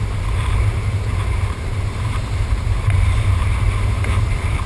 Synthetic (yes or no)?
yes